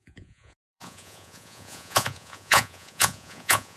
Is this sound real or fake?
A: fake